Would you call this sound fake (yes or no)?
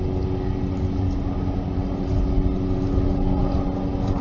no